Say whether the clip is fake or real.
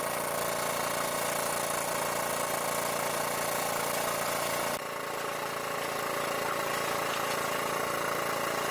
real